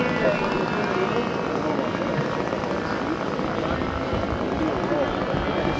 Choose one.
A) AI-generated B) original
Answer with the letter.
A